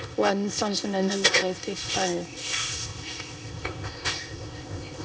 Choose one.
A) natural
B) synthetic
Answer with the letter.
B